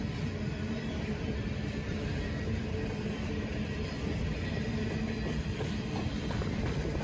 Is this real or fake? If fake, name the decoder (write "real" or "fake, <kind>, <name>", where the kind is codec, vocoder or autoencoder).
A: fake, vocoder, BigVGAN v2